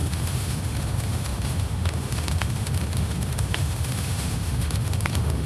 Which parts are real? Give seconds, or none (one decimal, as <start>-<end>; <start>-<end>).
none

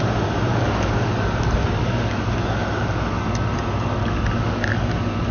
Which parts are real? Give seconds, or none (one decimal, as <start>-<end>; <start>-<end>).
0.0-0.5; 1.1-1.8; 2.3-4.0; 4.7-5.3